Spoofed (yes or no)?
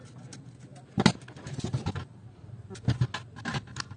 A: no